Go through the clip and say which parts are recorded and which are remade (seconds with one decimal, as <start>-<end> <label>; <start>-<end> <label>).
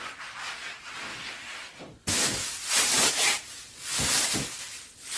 0.0-1.1 recorded; 1.1-3.1 remade; 3.1-5.2 recorded